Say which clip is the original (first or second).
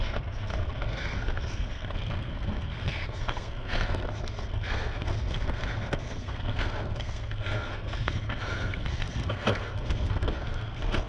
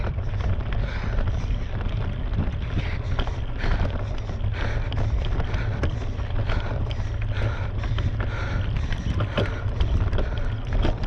second